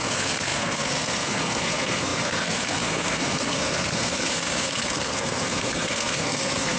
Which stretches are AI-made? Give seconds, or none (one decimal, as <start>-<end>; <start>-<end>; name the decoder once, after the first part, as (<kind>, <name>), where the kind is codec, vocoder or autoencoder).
0.0-6.8 (codec, SNAC)